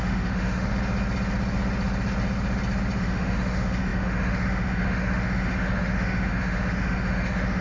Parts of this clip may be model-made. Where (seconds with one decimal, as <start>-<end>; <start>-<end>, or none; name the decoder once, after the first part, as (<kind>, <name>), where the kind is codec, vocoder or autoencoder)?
0.0-0.7 (autoencoder, DAC-VAE); 3.0-7.6